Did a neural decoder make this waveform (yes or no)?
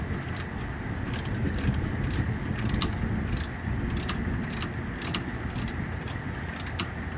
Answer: no